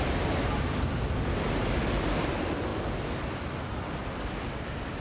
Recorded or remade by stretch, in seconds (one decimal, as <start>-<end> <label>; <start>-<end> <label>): 0.0-5.0 recorded